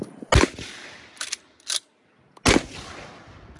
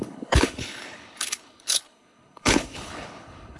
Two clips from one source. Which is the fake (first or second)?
second